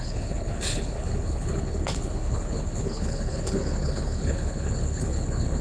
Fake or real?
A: fake